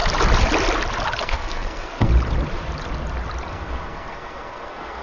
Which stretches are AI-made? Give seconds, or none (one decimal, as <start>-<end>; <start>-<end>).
1.2-2.1; 3.5-5.0